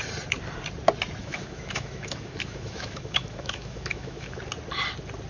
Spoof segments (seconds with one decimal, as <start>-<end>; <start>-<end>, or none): 1.2-4.4